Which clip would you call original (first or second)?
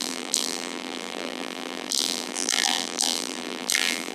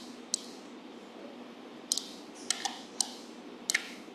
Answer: second